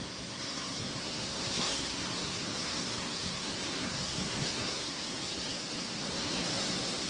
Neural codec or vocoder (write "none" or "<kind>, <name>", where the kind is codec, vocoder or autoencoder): codec, SNAC